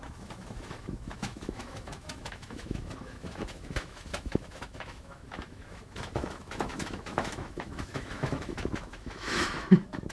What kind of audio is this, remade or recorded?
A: remade